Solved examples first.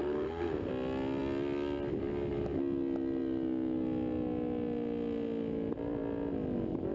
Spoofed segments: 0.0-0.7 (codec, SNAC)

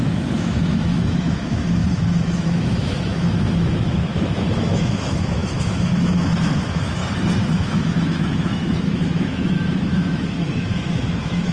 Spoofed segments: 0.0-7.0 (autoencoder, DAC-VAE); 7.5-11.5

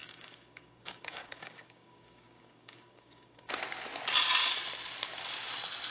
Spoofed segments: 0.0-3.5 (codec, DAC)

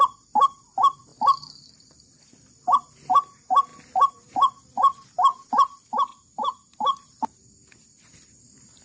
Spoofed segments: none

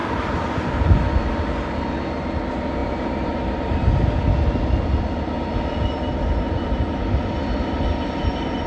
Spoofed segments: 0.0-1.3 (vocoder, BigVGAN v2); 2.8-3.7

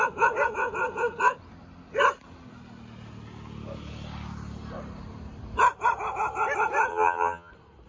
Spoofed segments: 6.9-7.5 (vocoder, HiFi-GAN)

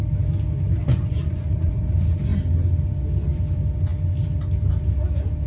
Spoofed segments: 0.9-1.7 (vocoder, Vocos)